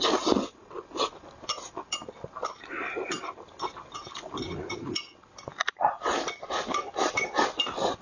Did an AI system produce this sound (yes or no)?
no